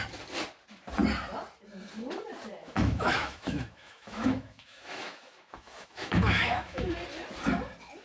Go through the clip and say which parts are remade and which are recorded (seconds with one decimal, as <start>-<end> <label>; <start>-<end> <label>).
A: 0.0-2.6 recorded; 2.6-6.9 remade; 6.9-8.0 recorded